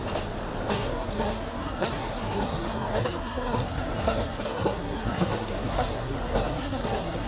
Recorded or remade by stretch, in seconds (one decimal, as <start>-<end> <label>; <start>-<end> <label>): 0.0-0.7 recorded; 0.7-7.3 remade